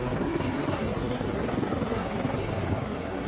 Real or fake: fake